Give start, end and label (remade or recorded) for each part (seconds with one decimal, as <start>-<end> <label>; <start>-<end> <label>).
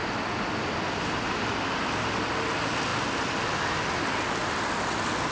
0.0-5.3 recorded